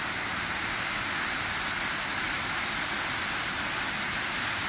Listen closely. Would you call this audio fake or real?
real